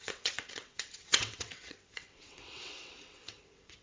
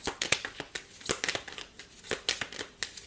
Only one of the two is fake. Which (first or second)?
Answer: first